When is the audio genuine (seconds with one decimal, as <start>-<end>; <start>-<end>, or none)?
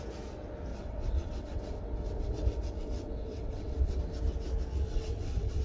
0.0-0.7; 4.0-4.8